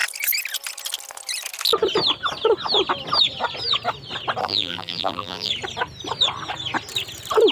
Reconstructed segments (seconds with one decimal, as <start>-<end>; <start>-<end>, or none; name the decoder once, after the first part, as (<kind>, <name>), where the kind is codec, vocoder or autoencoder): 4.4-5.5 (vocoder, BigVGAN v2)